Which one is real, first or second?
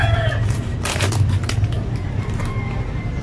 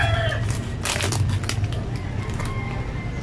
second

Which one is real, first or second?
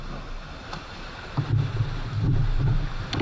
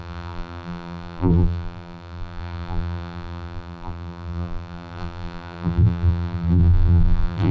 first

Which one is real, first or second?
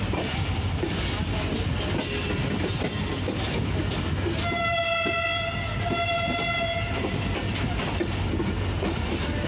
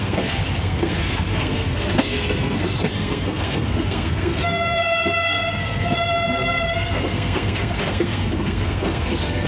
first